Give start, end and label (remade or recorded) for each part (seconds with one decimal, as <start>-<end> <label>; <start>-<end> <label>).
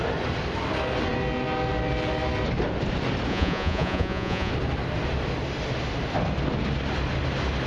0.0-3.3 recorded; 3.3-4.5 remade; 4.5-7.7 recorded